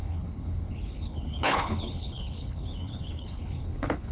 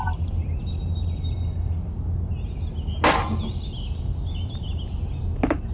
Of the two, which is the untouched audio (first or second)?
second